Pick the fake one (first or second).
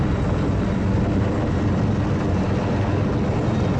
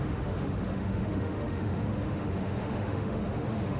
second